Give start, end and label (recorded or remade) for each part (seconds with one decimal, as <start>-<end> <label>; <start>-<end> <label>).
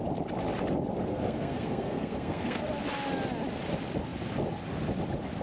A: 0.0-1.1 recorded; 1.1-2.6 remade; 2.6-5.4 recorded